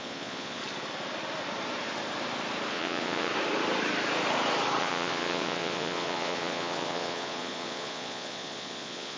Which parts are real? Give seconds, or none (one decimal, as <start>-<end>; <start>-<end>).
0.6-2.7; 3.3-4.8